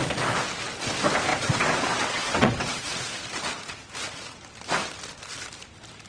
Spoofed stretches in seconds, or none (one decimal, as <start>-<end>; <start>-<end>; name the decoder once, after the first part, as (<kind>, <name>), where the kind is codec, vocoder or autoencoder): 1.3-3.0 (vocoder, WaveNeXt)